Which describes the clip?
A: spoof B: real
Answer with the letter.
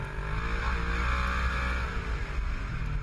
B